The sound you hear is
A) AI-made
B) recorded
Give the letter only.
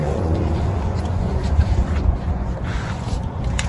A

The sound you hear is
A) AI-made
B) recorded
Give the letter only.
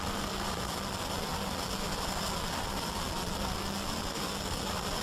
B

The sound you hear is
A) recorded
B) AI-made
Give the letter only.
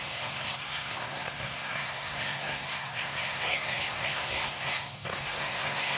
B